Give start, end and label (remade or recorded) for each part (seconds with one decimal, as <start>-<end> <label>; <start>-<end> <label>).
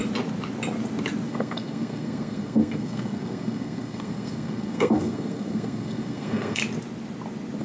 0.0-1.3 recorded; 1.3-6.6 remade; 6.6-7.6 recorded